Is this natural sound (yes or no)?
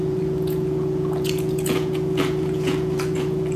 no